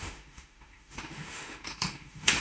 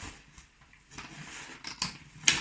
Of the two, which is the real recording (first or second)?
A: second